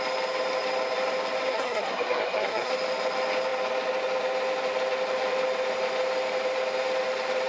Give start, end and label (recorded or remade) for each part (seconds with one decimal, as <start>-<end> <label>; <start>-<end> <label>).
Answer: 0.0-1.5 recorded; 1.5-2.7 remade; 2.7-7.5 recorded